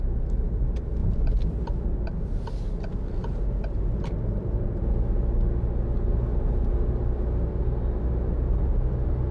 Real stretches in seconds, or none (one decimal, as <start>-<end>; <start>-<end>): 0.0-9.3